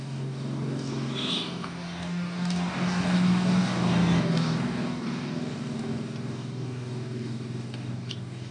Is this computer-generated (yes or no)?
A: yes